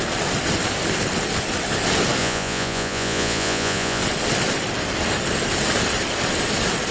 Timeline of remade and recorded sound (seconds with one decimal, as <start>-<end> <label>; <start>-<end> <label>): 0.0-2.2 recorded; 2.2-4.0 remade; 4.0-6.9 recorded